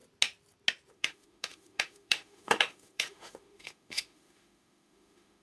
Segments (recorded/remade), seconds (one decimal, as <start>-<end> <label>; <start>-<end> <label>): 0.0-0.9 recorded; 0.9-5.4 remade